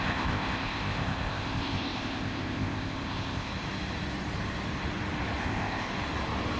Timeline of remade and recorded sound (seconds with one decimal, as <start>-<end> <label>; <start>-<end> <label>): 0.0-3.5 remade; 3.5-5.4 recorded; 5.4-5.9 remade; 5.9-6.6 recorded